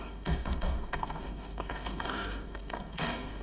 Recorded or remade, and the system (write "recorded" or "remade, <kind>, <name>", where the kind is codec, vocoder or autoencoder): remade, codec, DAC